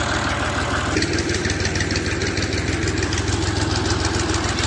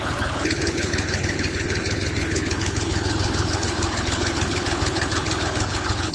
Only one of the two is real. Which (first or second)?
first